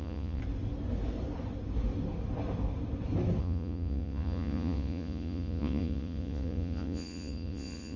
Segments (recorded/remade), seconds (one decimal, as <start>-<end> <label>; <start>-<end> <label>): 0.0-0.4 remade; 0.4-3.4 recorded; 3.4-8.0 remade